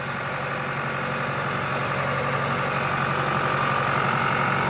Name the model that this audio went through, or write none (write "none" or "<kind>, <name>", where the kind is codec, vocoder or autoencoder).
none